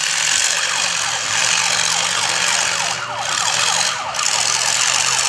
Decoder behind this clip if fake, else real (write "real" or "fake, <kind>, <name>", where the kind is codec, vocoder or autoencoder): real